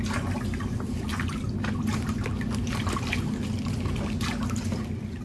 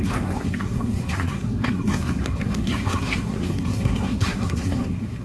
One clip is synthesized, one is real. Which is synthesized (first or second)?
second